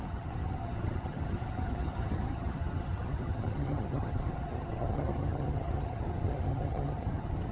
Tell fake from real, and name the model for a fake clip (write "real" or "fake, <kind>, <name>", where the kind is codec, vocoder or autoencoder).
fake, vocoder, HiFi-GAN